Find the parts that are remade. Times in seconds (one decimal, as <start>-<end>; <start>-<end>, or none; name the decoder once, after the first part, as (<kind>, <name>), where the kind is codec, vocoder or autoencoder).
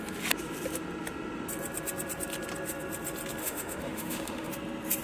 3.4-4.5 (autoencoder, DAC-VAE)